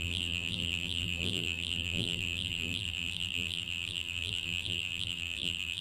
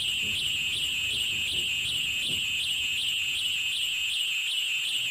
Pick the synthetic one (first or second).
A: first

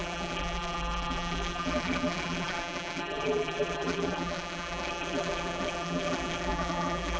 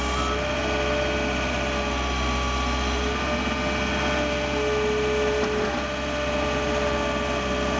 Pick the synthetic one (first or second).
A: first